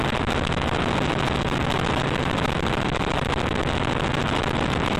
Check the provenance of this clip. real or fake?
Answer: real